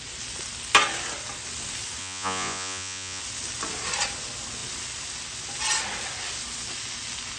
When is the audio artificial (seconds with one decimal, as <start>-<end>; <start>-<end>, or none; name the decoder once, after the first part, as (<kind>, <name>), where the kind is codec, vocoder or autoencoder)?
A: 2.0-3.2 (vocoder, Vocos)